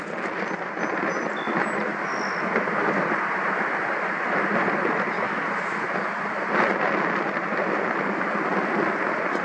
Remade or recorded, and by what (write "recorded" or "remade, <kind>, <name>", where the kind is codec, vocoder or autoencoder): recorded